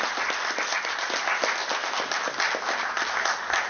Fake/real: real